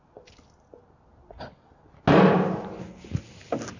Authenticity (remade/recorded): recorded